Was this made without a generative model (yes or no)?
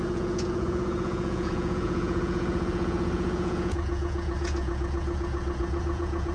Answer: no